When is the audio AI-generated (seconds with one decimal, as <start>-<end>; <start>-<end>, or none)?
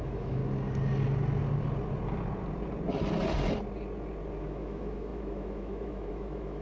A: 0.0-0.4; 4.4-6.6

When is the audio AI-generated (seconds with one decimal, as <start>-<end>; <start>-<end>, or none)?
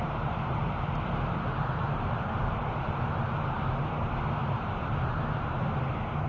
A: 0.0-3.8; 4.4-5.1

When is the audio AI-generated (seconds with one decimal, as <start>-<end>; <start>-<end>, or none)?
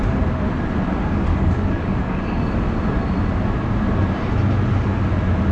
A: 1.3-2.4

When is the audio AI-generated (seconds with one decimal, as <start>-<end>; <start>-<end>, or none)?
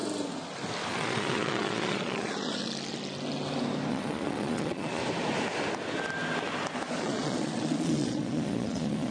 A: 0.9-2.6; 3.9-5.0; 7.0-9.1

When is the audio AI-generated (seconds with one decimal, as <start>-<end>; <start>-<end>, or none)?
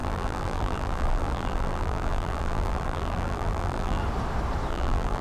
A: 0.0-4.0; 4.7-5.2